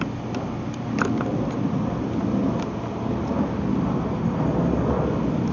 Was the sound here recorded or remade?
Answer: recorded